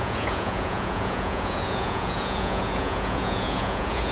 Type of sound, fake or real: fake